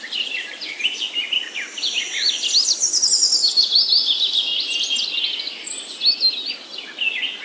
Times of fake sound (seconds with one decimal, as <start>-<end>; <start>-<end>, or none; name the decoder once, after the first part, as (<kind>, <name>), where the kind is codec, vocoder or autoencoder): none